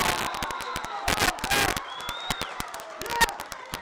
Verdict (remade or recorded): recorded